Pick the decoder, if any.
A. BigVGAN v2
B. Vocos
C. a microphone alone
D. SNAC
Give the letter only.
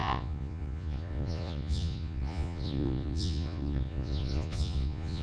B